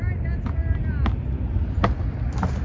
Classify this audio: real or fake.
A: real